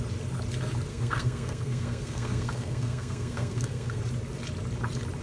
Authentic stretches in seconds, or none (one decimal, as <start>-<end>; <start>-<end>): 0.0-0.9; 4.0-5.2